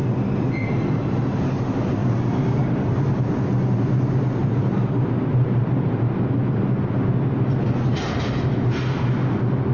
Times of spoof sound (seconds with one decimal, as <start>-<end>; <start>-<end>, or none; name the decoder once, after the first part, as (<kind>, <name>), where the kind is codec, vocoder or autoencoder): 2.0-2.9 (vocoder, BigVGAN v2); 4.4-6.4